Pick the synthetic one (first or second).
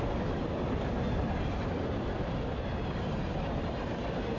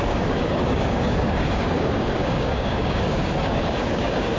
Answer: second